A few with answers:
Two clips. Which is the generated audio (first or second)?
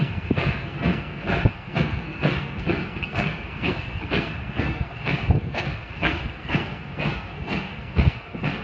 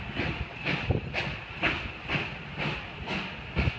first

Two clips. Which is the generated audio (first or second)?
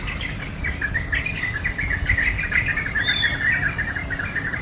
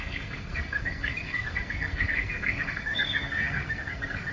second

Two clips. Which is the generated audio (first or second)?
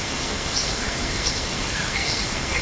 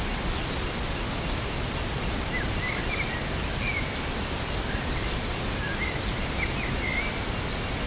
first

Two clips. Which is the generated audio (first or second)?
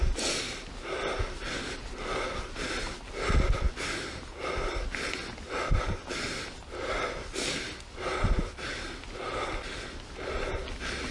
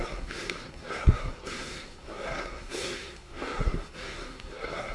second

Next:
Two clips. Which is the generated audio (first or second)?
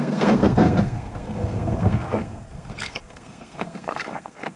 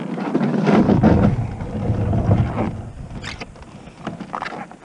first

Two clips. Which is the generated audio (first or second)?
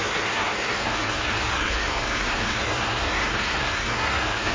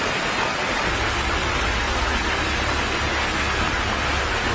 first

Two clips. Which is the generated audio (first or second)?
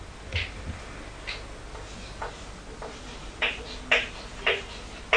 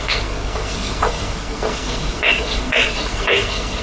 second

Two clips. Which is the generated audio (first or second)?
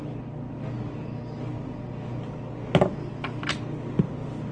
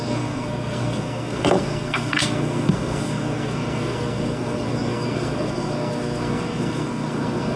second